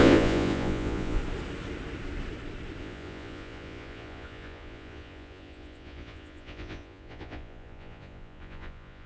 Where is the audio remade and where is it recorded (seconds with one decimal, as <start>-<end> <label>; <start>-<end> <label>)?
0.0-1.2 remade; 1.2-2.8 recorded; 2.8-9.1 remade